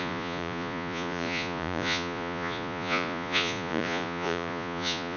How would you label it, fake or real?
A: fake